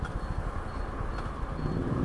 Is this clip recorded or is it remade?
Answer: recorded